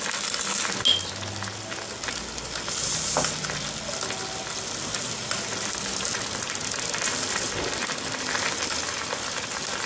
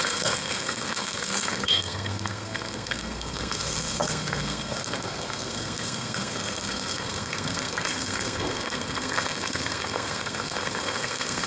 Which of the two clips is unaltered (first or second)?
first